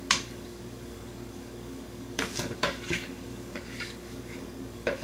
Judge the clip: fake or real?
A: fake